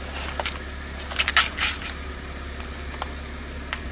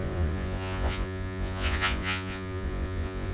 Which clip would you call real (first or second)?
first